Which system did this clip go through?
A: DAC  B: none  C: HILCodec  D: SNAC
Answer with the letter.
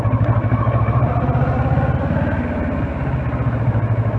B